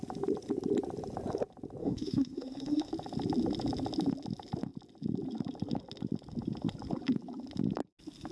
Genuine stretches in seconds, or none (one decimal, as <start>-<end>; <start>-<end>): 0.0-1.8; 2.9-8.3